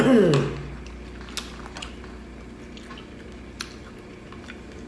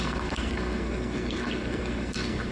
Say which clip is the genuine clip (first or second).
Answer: first